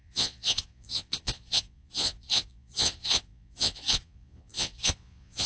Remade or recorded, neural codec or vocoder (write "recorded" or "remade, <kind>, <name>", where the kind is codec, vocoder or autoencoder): remade, vocoder, Vocos